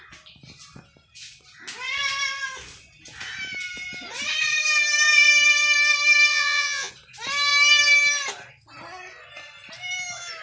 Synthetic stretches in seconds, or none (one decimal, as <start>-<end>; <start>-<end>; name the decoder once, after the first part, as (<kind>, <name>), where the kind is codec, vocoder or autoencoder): 6.3-6.9 (vocoder, Vocos)